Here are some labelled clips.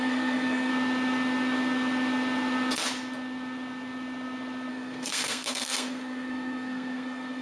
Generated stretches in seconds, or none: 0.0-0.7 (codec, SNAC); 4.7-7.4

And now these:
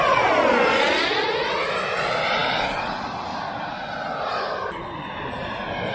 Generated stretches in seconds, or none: none